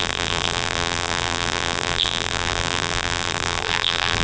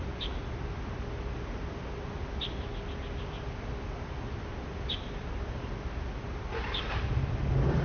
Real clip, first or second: second